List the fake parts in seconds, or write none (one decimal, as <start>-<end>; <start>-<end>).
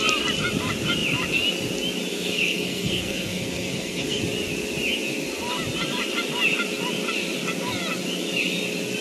2.1-4.2